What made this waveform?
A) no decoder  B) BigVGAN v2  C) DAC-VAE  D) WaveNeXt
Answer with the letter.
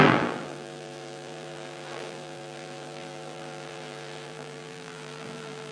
B